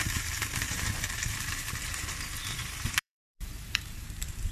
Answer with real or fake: fake